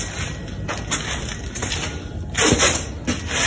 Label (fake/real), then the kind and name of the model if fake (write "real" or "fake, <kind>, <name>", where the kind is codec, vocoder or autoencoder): real